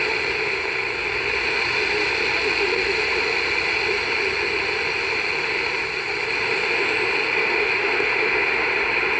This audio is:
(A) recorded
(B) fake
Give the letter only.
A